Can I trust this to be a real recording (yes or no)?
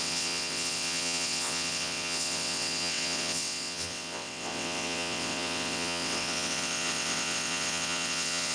no